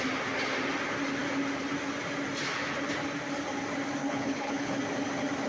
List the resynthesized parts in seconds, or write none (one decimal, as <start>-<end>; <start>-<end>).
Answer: 4.0-4.8

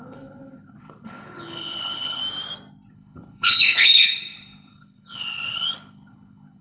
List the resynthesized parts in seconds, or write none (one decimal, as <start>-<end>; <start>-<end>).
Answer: 0.0-2.2; 2.9-6.6

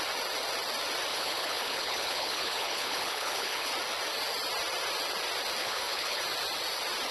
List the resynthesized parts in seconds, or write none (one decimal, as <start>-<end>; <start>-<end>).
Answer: 1.1-3.7; 5.6-6.2

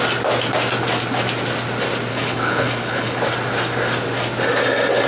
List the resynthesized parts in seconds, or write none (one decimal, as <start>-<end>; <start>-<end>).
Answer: 2.1-3.2

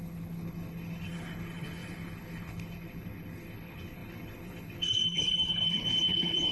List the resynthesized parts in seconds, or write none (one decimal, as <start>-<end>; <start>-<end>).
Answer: 0.0-6.5